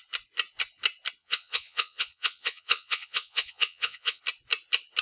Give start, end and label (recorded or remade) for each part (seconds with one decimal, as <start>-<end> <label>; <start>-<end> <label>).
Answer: 0.0-1.2 recorded; 1.2-4.2 remade; 4.2-5.0 recorded